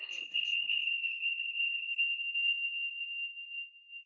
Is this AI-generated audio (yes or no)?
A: yes